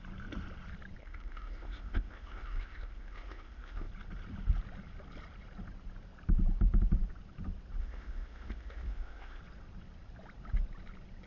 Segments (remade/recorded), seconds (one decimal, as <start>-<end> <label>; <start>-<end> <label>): 0.0-1.0 recorded; 1.0-3.9 remade; 3.9-7.8 recorded; 7.8-9.4 remade; 9.4-11.3 recorded